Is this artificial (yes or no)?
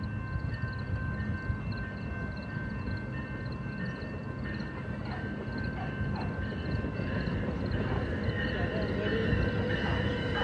no